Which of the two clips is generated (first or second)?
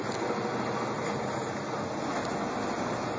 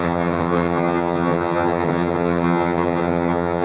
second